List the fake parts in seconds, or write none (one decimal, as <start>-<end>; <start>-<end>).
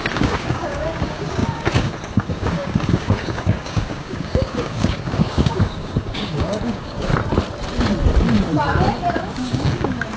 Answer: 0.0-7.1; 9.1-10.2